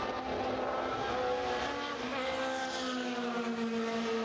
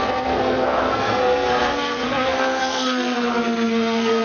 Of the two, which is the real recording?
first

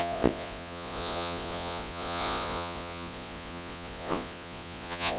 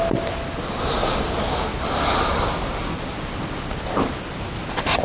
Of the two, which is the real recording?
second